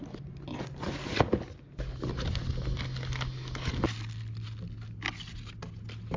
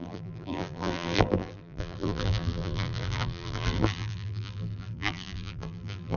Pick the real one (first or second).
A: first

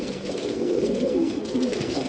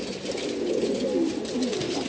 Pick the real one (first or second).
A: second